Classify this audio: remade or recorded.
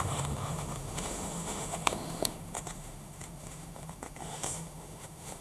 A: remade